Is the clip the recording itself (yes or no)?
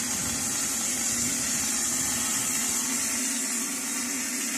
yes